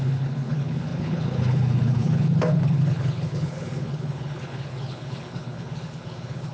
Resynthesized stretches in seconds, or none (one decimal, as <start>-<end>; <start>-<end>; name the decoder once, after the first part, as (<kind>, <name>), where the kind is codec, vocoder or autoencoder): 0.0-6.5 (codec, HILCodec)